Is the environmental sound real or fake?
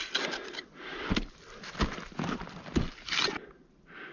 real